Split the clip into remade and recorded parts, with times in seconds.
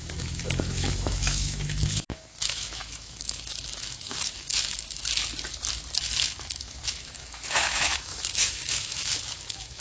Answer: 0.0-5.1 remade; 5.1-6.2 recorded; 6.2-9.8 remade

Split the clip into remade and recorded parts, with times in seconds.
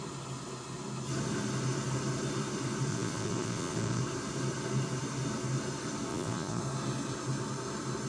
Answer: 0.0-2.9 recorded; 2.9-4.0 remade; 4.0-6.1 recorded; 6.1-6.6 remade; 6.6-8.1 recorded